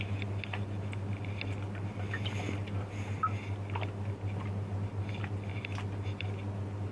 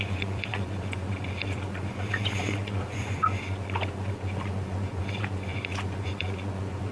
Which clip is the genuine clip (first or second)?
first